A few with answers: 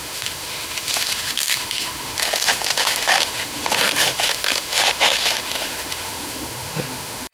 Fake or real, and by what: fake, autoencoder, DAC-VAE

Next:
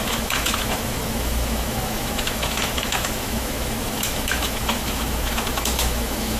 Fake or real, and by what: fake, autoencoder, DAC-VAE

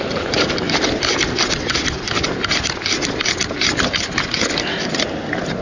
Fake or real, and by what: real